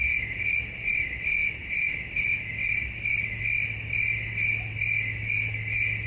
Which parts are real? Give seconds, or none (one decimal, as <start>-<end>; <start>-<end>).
0.0-6.1